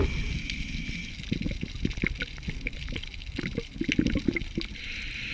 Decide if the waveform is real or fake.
real